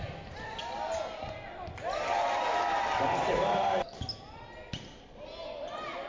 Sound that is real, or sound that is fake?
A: real